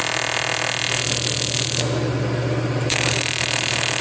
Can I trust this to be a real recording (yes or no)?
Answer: yes